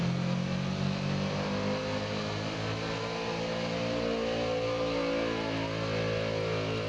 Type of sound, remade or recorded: recorded